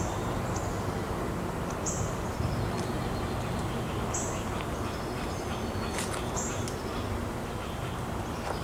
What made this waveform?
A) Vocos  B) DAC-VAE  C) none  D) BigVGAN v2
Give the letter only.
C